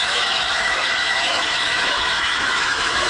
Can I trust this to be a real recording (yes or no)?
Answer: no